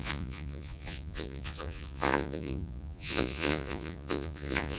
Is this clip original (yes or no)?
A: no